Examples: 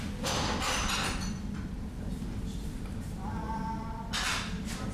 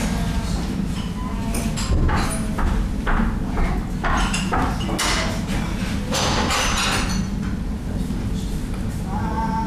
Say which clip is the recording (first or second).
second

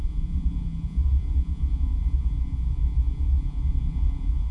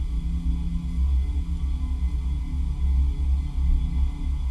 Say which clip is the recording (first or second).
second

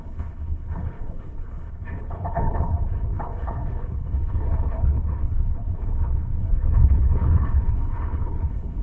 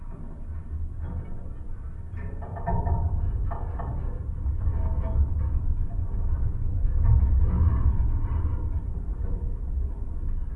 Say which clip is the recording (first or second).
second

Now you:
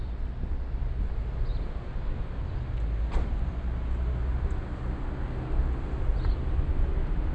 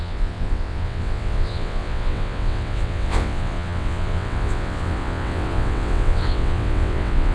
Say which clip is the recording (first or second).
first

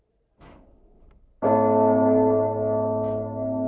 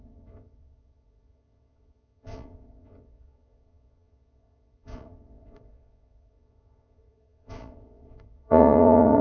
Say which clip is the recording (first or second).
first